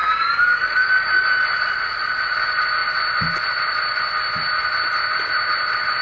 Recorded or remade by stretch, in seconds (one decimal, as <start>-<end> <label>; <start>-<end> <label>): 0.0-0.9 remade; 0.9-6.0 recorded